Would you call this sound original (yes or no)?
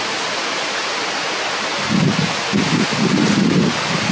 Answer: yes